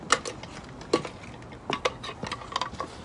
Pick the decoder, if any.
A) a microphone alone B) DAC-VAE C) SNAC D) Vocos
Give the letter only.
A